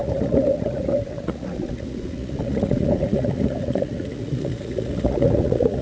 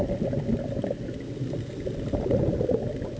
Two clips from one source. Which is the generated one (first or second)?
first